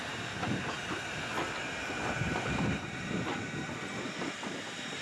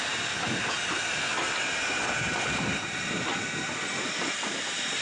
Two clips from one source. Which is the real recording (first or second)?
second